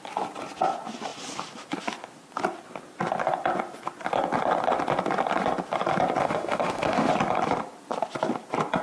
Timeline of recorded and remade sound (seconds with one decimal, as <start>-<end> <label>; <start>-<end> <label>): 0.0-6.2 recorded; 6.2-7.1 remade; 7.1-8.8 recorded